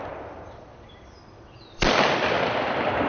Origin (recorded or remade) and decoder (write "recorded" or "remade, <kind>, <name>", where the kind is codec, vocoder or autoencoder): remade, vocoder, BigVGAN v2